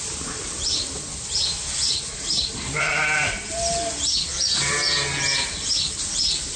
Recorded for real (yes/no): yes